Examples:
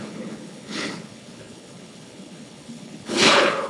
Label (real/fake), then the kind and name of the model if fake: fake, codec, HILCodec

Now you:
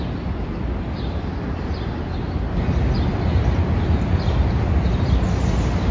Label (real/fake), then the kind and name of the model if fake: real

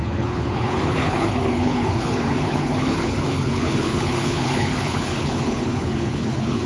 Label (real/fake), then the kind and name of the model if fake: fake, codec, HILCodec